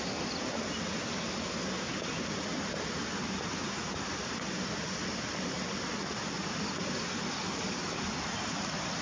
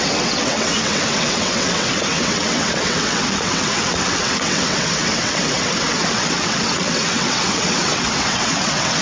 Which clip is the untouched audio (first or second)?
first